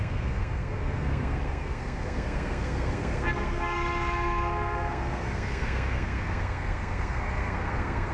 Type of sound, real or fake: fake